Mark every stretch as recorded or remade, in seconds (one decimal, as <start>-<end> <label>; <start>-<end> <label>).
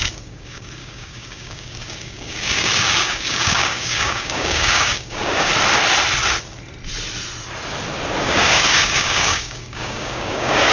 0.0-5.5 remade; 5.5-8.2 recorded; 8.2-10.7 remade